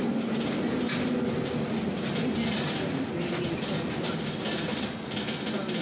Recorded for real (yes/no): yes